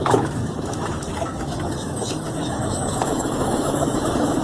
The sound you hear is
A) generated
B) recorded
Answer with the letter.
A